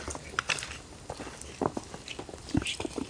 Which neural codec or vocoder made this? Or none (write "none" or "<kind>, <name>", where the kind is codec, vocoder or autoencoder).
none